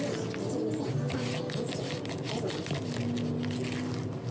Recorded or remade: recorded